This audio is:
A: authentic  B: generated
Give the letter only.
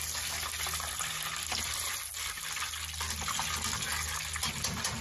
A